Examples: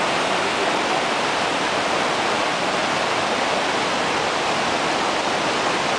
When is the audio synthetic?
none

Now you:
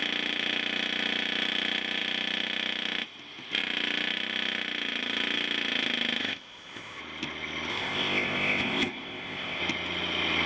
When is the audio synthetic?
6.2-7.0 (codec, ZipCodec); 7.7-9.6